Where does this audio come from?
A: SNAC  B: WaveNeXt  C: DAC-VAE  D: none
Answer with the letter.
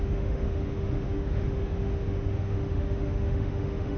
C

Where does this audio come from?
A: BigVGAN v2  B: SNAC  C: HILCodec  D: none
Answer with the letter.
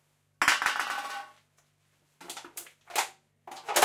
D